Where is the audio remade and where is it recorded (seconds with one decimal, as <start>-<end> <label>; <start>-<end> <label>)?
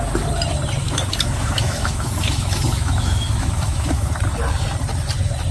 0.0-0.8 recorded; 0.8-4.1 remade; 4.1-5.5 recorded